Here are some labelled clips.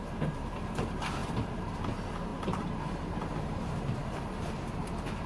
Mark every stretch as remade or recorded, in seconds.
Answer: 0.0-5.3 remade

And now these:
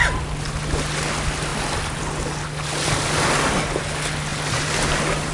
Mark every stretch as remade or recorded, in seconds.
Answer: 0.0-4.3 recorded; 4.3-5.3 remade

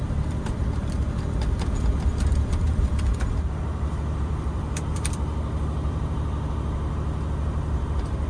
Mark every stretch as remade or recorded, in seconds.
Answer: 0.0-8.3 remade

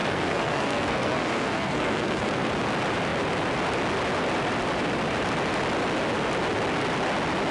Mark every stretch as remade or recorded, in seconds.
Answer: 0.0-2.5 remade; 2.5-7.5 recorded